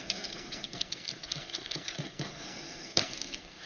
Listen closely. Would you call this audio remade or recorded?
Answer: remade